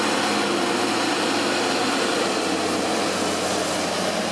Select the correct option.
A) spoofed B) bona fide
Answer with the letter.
B